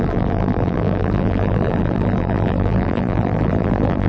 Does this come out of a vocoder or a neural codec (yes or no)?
yes